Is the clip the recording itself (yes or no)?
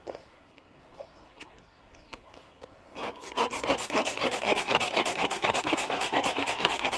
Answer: no